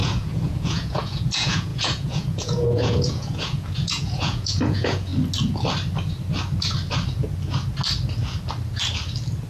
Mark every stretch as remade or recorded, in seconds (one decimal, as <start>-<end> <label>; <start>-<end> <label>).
0.0-5.1 remade; 5.1-9.5 recorded